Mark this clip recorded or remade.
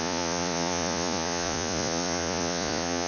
remade